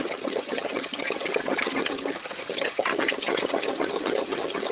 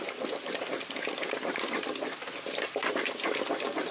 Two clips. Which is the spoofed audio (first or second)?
first